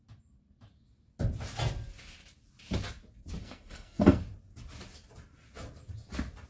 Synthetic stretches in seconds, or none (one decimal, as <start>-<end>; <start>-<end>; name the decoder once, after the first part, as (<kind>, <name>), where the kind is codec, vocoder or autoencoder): 3.4-4.2 (codec, SNAC)

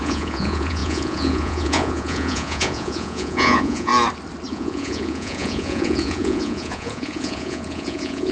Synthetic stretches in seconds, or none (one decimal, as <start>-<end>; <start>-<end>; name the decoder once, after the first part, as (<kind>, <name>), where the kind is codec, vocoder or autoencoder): 0.0-3.9 (vocoder, Vocos); 4.5-8.3